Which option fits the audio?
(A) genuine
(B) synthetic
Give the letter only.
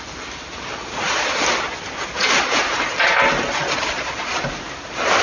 A